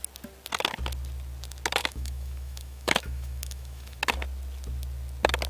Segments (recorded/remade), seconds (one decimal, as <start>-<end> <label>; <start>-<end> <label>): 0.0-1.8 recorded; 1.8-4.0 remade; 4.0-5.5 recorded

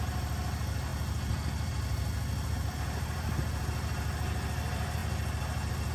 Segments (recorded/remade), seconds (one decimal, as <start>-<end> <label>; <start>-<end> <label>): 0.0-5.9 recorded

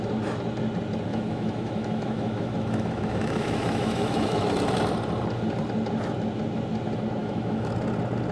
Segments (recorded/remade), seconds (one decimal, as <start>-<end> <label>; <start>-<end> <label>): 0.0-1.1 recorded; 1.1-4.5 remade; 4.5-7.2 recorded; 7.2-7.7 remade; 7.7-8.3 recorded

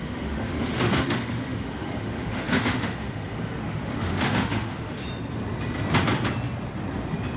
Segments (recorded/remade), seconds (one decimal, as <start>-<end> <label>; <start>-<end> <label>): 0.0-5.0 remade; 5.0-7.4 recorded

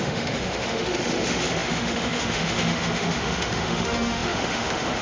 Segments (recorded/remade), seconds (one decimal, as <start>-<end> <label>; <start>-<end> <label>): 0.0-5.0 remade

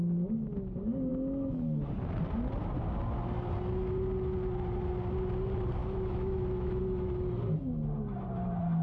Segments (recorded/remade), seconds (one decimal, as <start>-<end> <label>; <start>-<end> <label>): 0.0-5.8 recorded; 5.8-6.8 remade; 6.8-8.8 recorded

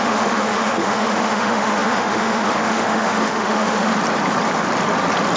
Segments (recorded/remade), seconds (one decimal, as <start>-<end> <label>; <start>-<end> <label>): 0.0-3.9 remade; 3.9-5.4 recorded

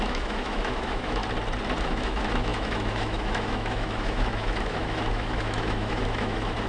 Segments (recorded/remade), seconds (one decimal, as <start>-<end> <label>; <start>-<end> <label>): 0.0-1.2 remade; 1.2-1.8 recorded; 1.8-6.7 remade